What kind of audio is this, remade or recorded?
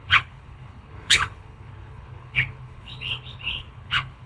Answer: remade